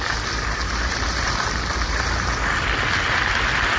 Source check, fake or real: real